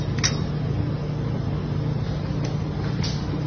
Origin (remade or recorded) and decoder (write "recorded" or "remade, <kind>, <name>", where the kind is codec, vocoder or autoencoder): recorded